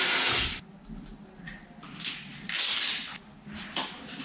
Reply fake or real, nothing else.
real